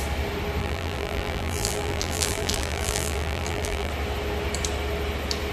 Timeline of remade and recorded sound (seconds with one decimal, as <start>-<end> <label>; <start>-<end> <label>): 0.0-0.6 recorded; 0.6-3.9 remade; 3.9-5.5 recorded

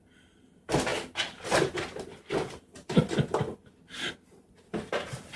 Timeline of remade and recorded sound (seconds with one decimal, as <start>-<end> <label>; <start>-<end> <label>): 0.0-5.4 recorded

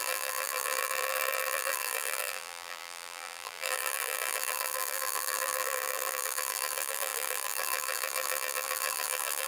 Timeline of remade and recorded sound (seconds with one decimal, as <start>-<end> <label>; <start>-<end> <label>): 0.0-9.5 remade

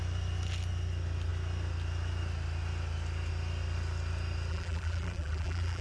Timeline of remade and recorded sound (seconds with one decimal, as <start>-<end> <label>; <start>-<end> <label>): 0.0-4.5 recorded; 4.5-5.8 remade

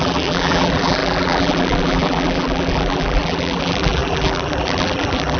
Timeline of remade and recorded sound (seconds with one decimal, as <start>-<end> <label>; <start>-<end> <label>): 0.0-5.4 remade